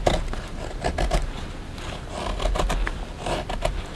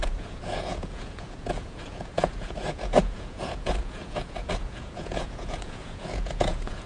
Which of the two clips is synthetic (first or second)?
second